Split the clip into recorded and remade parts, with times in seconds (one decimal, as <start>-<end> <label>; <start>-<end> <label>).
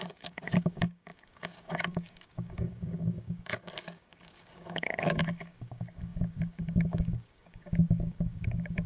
0.0-8.9 remade